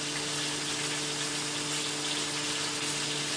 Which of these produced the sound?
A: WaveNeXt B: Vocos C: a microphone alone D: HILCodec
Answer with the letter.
C